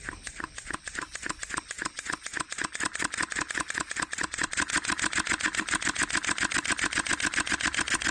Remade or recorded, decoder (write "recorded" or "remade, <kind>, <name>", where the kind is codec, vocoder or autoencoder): recorded